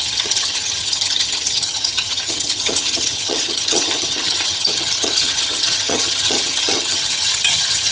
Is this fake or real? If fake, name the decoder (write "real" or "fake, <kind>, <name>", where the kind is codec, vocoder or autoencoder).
fake, vocoder, HiFi-GAN